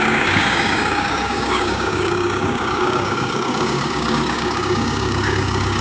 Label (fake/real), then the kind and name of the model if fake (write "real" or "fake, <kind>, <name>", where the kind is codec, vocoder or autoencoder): fake, codec, DAC